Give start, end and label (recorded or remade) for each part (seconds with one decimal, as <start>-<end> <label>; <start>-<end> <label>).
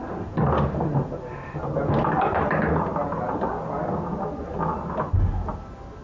0.0-6.0 recorded